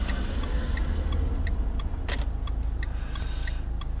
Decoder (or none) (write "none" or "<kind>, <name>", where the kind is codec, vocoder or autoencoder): none